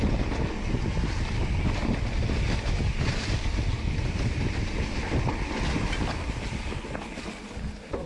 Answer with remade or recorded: recorded